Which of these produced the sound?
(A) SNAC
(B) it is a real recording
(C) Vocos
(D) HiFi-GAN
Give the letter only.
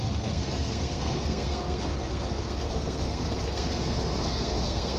A